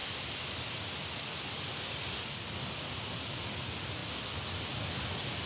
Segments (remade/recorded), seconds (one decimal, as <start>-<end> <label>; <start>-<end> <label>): 0.0-5.5 recorded